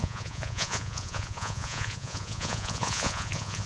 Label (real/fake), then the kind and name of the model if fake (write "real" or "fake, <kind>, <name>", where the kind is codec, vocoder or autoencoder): fake, vocoder, Vocos